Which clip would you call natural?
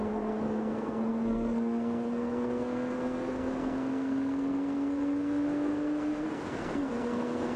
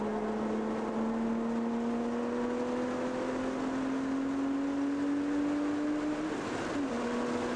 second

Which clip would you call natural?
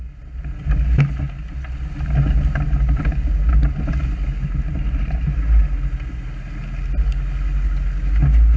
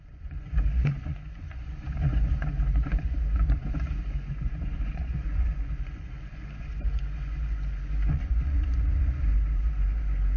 first